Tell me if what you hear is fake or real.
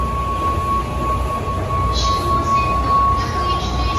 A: real